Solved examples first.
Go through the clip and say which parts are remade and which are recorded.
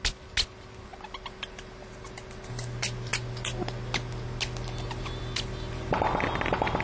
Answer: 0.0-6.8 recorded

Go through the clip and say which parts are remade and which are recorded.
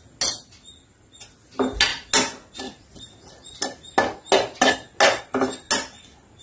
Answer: 0.0-6.4 recorded